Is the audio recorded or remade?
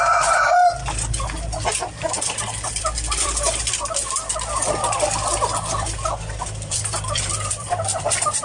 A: remade